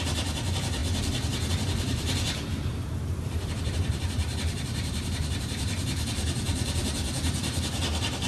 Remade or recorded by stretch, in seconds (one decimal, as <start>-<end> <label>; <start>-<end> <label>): 0.0-0.8 remade; 0.8-1.5 recorded; 1.5-8.3 remade